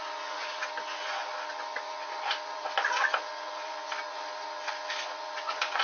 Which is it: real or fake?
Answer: fake